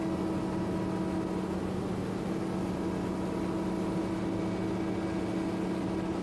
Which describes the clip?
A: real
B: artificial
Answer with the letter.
A